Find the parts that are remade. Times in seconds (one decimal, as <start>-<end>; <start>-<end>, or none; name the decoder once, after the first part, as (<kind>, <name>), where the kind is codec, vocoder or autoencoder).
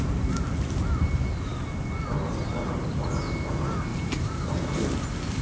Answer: 3.9-4.7 (vocoder, BigVGAN v2)